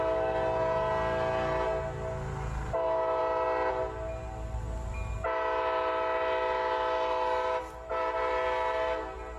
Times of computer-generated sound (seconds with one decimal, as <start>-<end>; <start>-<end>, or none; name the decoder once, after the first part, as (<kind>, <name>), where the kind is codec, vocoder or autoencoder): none